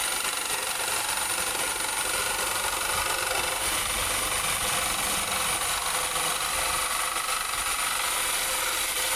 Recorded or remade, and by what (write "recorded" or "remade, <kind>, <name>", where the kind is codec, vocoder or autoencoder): recorded